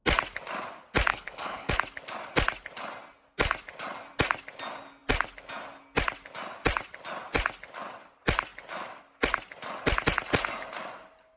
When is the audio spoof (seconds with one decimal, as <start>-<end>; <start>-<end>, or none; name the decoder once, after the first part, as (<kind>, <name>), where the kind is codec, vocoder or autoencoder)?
1.1-1.7 (codec, HILCodec)